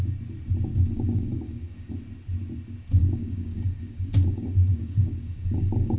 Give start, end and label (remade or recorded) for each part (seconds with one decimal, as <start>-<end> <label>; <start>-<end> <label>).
0.0-0.7 recorded; 0.7-1.9 remade; 1.9-3.0 recorded; 3.0-6.0 remade